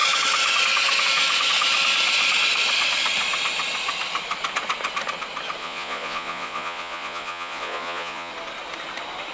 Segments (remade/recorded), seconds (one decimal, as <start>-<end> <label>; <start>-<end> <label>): 0.0-5.6 recorded; 5.6-8.3 remade; 8.3-9.3 recorded